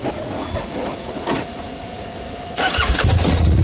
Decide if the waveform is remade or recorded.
remade